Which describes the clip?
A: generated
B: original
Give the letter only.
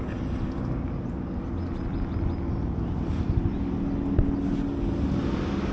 B